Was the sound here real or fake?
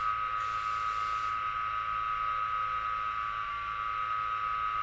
real